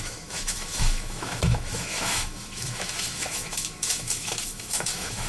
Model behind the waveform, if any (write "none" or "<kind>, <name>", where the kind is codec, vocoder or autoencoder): autoencoder, DAC-VAE